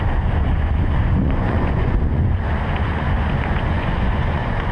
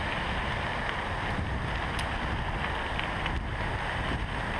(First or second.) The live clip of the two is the second